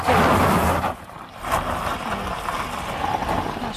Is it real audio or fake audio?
real